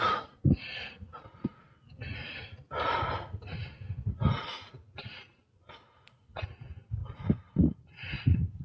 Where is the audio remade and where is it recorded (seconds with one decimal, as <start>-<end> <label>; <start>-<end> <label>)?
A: 0.0-8.6 recorded